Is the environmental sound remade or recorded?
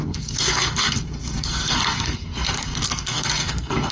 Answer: remade